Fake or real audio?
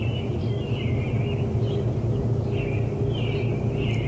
real